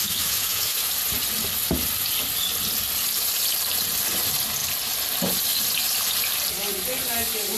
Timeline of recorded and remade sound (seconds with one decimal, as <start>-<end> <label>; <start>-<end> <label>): 0.0-0.9 remade; 0.9-7.6 recorded

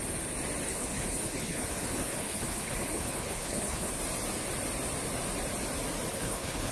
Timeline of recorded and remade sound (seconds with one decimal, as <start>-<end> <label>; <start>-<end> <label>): 0.0-0.7 recorded; 0.7-3.9 remade; 3.9-6.1 recorded; 6.1-6.7 remade

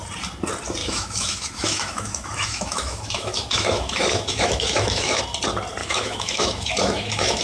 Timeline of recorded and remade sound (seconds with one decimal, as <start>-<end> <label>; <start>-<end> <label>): 0.0-0.8 recorded; 0.8-5.2 remade; 5.2-5.8 recorded; 5.8-7.4 remade